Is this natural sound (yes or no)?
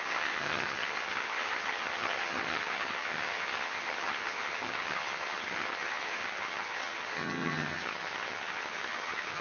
no